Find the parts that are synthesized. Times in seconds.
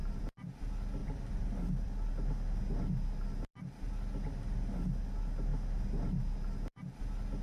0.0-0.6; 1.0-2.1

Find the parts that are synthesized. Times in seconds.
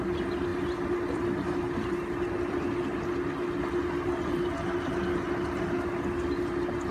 none